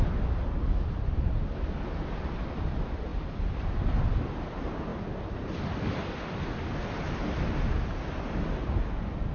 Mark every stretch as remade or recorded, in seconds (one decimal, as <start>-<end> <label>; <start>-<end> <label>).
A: 0.0-9.3 recorded